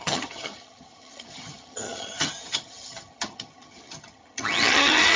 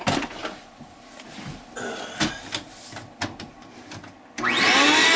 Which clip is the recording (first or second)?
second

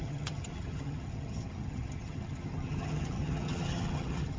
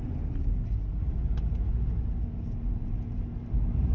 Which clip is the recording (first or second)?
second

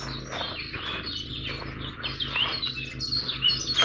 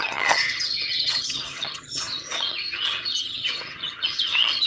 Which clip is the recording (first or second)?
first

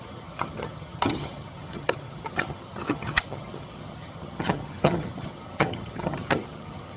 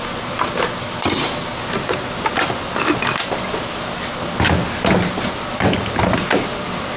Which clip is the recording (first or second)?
second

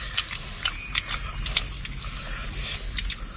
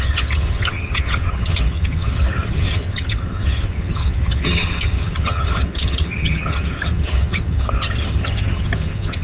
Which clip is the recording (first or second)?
first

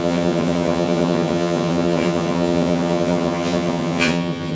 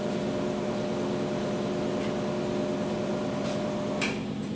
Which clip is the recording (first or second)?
second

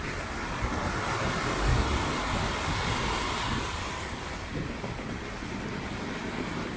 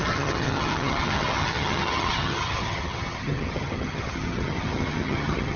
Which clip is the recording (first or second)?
first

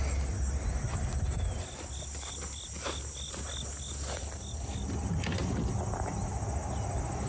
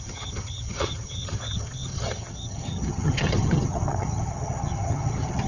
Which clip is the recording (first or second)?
first